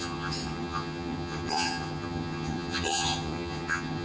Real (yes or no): no